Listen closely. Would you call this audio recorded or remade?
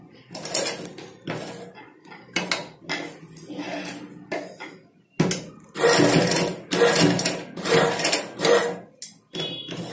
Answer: recorded